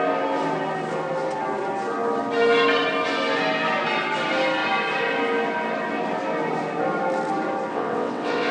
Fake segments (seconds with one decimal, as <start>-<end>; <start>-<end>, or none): 7.7-8.5